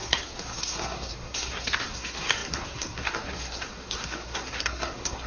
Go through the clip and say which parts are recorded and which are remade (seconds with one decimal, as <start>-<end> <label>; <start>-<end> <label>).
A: 0.0-5.3 remade